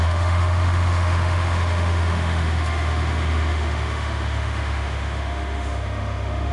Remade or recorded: remade